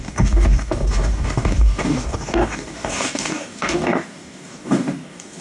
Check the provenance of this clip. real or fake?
fake